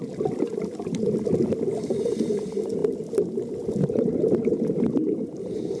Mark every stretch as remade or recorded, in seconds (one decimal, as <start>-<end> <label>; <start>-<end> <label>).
0.0-0.5 recorded; 0.5-2.2 remade; 2.2-4.5 recorded; 4.5-5.1 remade; 5.1-5.8 recorded